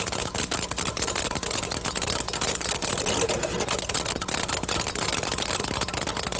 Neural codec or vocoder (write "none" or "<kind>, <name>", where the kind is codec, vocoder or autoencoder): none